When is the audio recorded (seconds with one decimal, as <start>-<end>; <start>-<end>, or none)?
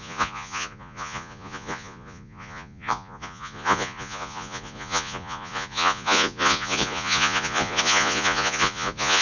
none